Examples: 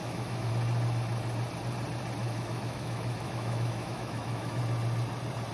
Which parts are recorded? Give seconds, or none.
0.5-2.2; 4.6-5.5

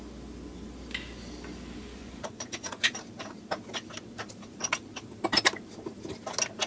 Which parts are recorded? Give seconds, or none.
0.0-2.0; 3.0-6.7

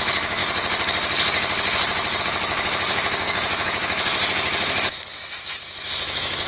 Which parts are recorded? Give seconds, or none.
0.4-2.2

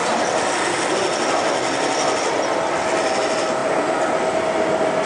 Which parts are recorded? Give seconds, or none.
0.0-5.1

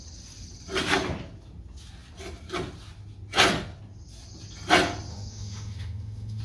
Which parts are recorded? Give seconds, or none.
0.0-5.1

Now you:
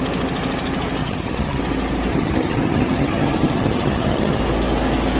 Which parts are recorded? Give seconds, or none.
0.0-1.0; 1.6-2.1; 4.4-5.2

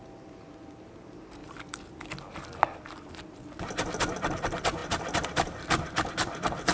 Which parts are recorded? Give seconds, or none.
0.0-6.7

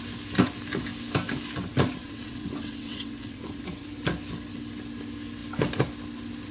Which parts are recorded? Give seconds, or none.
0.0-2.0; 3.8-6.5